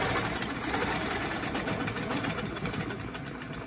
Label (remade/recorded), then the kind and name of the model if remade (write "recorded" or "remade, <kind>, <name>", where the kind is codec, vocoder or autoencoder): recorded